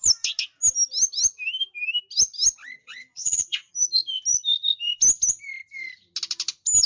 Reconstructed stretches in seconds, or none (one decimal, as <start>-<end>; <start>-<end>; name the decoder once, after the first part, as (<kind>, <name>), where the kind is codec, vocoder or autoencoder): 2.8-3.7 (vocoder, WaveNeXt)

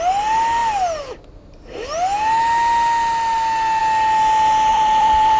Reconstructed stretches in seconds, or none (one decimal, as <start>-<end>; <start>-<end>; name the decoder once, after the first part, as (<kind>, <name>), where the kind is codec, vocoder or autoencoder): 4.7-5.4 (vocoder, BigVGAN v2)

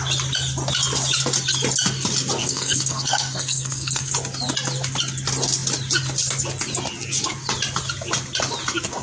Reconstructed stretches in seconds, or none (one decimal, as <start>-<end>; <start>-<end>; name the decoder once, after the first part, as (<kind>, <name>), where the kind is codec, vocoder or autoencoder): 2.4-4.1 (codec, SNAC)

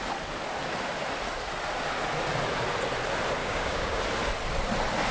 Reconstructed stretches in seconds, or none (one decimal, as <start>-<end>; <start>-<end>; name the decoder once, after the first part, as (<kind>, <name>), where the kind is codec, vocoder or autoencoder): 3.4-4.0 (codec, DAC)